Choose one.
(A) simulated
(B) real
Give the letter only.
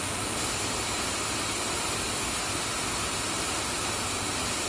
B